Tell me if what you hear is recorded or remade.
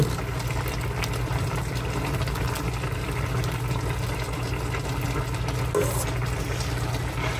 recorded